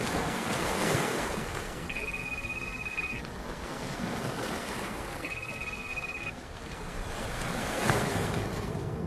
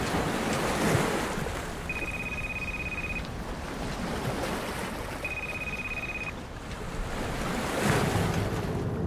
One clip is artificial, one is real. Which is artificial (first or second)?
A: first